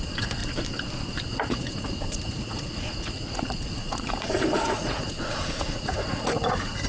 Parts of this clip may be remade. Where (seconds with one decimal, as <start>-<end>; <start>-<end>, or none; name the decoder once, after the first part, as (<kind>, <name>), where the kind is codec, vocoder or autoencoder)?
0.0-0.4 (vocoder, Vocos); 1.3-6.9